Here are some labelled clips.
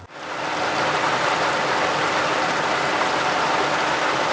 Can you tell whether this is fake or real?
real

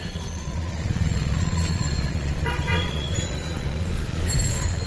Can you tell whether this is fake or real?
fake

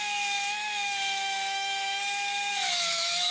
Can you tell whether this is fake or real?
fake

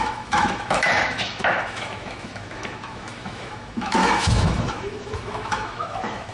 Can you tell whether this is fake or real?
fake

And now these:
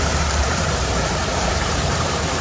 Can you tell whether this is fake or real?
fake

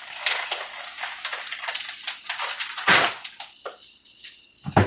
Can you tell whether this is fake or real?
real